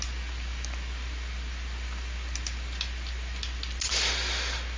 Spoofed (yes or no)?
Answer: no